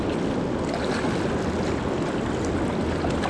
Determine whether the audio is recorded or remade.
recorded